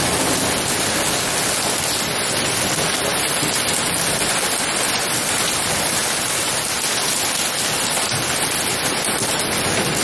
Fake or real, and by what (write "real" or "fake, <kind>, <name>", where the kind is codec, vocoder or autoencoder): real